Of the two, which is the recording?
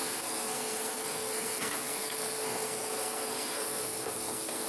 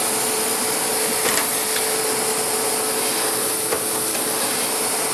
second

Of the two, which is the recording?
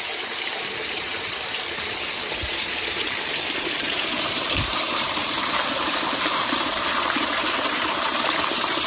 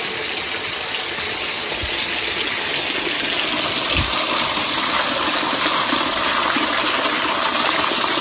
second